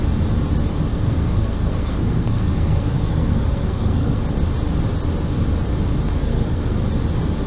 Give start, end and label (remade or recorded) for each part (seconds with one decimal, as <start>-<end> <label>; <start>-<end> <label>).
0.0-0.9 recorded; 0.9-4.2 remade; 4.2-6.2 recorded; 6.2-6.8 remade; 6.8-7.5 recorded